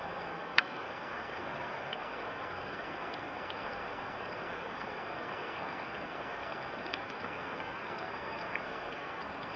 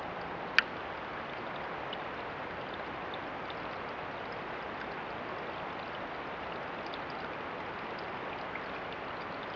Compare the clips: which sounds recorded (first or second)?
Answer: second